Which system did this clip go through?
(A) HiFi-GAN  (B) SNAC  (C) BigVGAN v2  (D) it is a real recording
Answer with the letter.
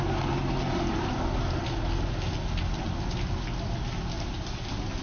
D